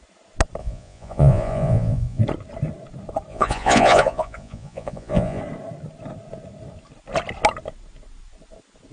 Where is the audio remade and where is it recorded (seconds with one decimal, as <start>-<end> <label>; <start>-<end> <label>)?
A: 0.0-0.6 recorded; 0.6-2.2 remade; 2.2-3.3 recorded; 3.3-5.4 remade; 5.4-8.9 recorded